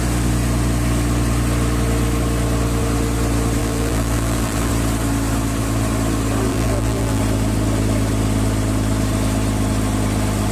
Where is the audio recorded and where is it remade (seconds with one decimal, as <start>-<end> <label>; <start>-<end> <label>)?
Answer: 0.0-3.6 recorded; 3.6-4.7 remade; 4.7-6.5 recorded; 6.5-7.2 remade; 7.2-10.5 recorded